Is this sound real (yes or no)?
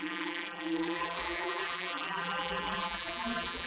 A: no